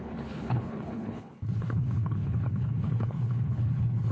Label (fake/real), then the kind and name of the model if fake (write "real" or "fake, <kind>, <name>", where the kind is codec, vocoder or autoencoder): fake, codec, HILCodec